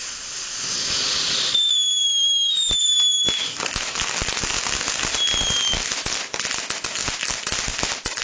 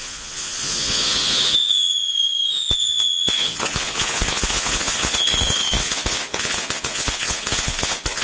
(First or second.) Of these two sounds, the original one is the first